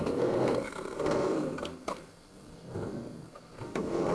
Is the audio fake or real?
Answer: fake